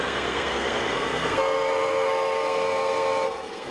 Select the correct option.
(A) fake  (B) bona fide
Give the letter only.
A